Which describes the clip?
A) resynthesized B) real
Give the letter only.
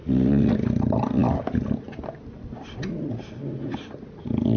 B